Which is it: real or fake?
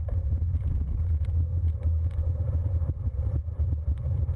fake